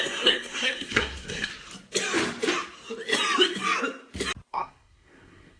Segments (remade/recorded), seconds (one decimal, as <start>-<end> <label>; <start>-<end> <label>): 0.0-1.5 remade; 1.5-4.5 recorded; 4.5-5.6 remade